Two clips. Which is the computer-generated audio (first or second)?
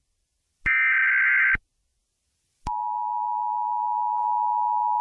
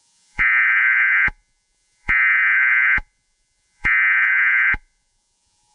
second